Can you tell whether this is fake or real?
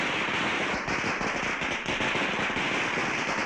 real